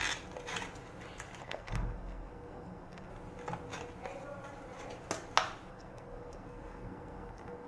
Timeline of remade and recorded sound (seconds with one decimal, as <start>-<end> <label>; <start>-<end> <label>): 0.0-1.4 recorded; 1.4-3.1 remade; 3.1-5.7 recorded; 5.7-7.7 remade